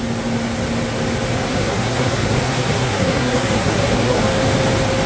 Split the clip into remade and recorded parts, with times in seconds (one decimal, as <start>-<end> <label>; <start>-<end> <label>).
0.0-1.5 recorded; 1.5-4.2 remade; 4.2-5.1 recorded